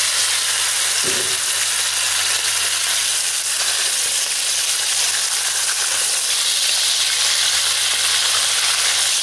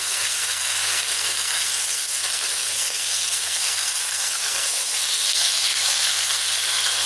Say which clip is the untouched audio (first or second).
first